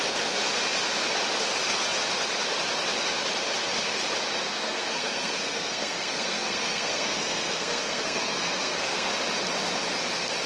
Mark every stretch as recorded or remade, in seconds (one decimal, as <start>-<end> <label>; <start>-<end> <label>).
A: 0.0-4.4 recorded; 4.4-9.1 remade; 9.1-10.5 recorded